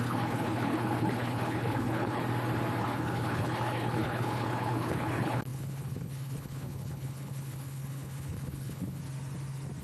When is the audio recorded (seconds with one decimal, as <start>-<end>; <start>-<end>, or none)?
2.2-2.8; 9.0-9.8